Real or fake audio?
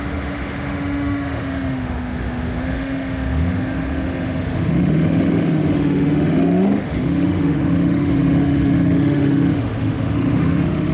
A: fake